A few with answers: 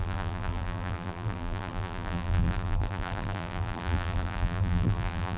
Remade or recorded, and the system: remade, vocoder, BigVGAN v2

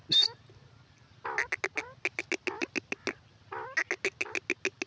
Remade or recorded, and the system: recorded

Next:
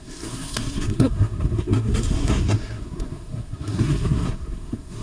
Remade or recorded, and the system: remade, codec, SNAC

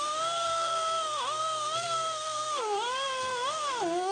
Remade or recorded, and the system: remade, codec, SNAC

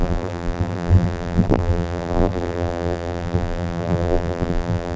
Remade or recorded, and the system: remade, vocoder, BigVGAN v2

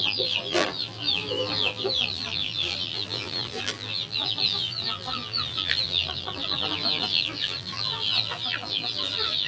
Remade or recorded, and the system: remade, vocoder, BigVGAN v2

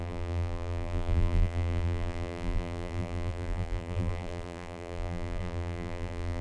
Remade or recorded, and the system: remade, vocoder, BigVGAN v2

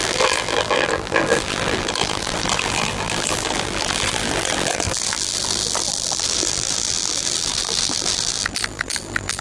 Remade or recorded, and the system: remade, vocoder, BigVGAN v2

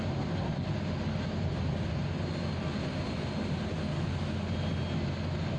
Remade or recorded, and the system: recorded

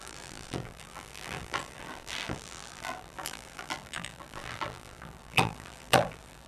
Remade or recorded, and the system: remade, vocoder, BigVGAN v2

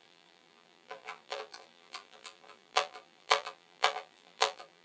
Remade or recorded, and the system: remade, vocoder, BigVGAN v2